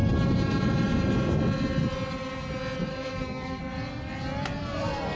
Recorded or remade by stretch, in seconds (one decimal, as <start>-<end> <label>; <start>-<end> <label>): 0.0-2.9 recorded; 2.9-3.6 remade; 3.6-5.2 recorded